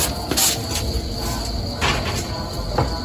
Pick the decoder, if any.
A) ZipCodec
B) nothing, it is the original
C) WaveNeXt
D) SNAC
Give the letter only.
B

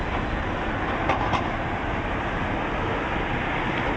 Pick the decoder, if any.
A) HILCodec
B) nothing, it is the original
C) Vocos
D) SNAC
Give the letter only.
B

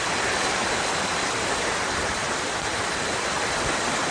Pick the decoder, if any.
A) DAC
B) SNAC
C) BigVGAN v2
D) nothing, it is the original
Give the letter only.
D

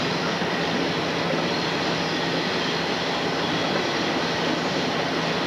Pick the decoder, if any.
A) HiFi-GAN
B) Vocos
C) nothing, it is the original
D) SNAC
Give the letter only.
C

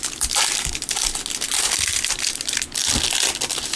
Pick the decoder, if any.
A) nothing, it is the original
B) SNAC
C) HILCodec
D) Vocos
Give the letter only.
A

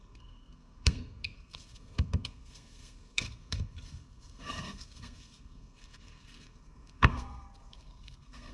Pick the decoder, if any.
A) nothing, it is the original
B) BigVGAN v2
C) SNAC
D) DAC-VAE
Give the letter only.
C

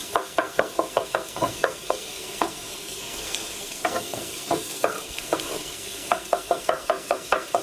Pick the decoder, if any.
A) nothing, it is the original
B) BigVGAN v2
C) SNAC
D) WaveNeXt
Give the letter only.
C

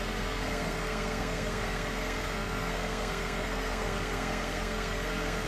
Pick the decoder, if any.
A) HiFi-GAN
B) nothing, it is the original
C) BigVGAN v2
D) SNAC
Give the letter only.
D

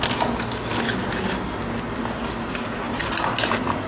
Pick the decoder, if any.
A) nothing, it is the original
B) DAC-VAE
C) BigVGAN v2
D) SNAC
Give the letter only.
A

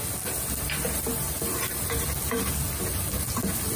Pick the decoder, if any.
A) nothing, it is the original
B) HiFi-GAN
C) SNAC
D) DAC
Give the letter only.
A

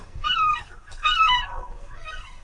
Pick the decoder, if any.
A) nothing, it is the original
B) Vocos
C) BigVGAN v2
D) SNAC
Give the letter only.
D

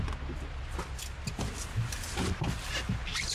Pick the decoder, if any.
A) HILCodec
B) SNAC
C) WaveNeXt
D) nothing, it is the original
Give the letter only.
D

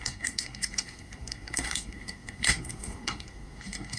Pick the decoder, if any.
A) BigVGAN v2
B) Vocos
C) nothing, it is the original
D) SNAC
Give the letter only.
D